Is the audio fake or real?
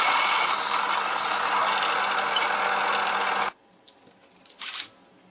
real